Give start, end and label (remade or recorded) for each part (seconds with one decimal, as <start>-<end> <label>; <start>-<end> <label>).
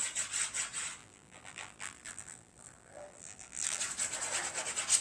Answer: 0.0-1.0 recorded; 1.0-3.8 remade; 3.8-5.0 recorded